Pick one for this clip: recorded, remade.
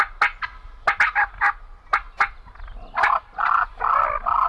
recorded